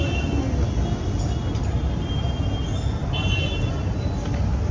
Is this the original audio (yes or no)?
yes